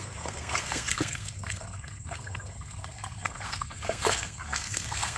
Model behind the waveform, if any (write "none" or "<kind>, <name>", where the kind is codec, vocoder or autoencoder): codec, SNAC